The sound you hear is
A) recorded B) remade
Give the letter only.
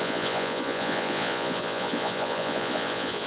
B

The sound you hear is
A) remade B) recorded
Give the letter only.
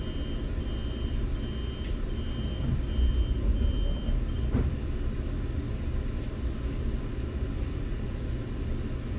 B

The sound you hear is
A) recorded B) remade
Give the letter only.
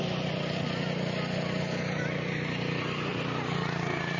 A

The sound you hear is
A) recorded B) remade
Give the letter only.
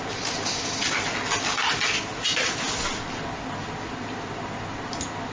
A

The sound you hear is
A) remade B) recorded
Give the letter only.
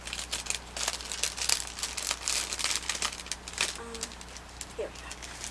B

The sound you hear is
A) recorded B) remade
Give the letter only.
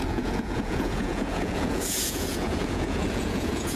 B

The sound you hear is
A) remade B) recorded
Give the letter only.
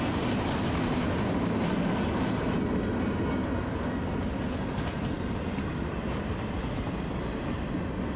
B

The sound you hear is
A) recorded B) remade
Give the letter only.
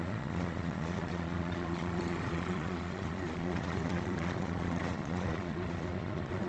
B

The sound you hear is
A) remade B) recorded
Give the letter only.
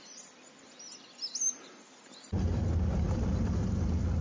B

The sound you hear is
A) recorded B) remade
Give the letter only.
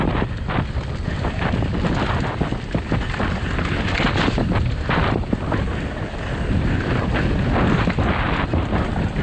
A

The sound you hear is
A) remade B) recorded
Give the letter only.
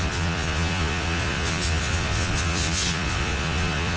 A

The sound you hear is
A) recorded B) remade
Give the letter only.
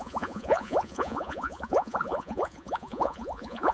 B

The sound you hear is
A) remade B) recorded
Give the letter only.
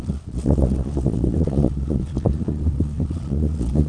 A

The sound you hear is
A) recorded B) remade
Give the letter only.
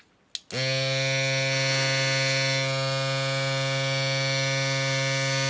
A